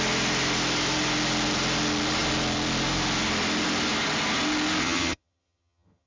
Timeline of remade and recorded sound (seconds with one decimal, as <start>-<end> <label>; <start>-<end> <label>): 0.0-4.8 recorded; 4.8-6.1 remade